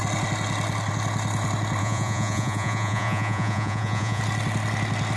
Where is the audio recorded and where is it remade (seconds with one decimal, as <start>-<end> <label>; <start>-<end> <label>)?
0.0-1.8 recorded; 1.8-4.2 remade; 4.2-5.2 recorded